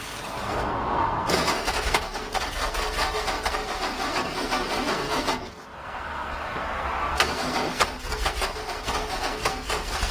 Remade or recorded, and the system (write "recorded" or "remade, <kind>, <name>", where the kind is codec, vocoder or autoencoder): remade, codec, SNAC